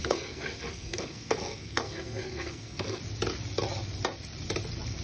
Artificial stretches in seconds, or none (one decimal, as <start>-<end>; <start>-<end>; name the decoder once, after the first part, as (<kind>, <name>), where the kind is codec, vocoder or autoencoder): 0.0-3.0 (codec, SNAC)